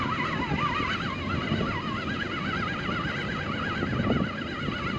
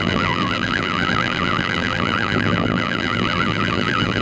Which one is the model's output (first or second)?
second